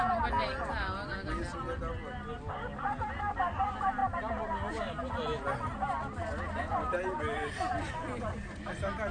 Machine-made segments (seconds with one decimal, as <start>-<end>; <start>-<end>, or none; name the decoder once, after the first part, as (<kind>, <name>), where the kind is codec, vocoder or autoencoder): none